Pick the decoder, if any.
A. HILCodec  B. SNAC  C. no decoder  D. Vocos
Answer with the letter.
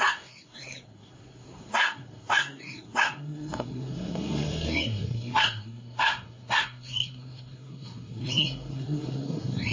B